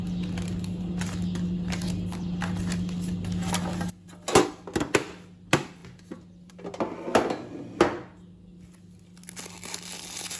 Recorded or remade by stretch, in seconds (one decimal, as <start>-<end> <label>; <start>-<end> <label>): 0.0-10.4 recorded